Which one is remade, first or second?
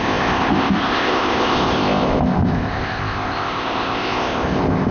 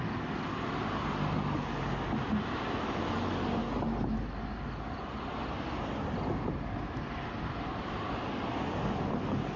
first